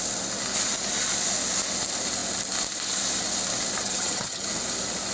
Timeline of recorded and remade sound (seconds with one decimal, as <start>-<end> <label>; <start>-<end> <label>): 0.0-3.8 recorded; 3.8-4.5 remade; 4.5-5.1 recorded